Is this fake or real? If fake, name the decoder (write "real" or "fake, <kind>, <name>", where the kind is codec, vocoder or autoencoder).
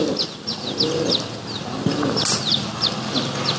real